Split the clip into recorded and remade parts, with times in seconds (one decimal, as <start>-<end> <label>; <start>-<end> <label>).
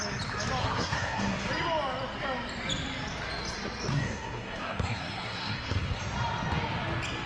0.0-0.6 recorded; 0.6-1.5 remade; 1.5-3.9 recorded; 3.9-6.0 remade; 6.0-7.3 recorded